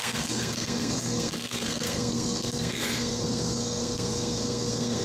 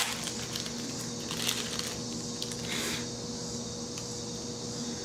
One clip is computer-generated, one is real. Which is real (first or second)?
second